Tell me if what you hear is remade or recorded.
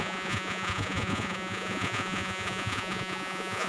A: remade